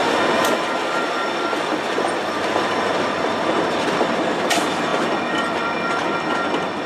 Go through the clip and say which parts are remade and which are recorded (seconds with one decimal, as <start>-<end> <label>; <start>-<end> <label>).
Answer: 0.0-2.9 remade; 2.9-6.9 recorded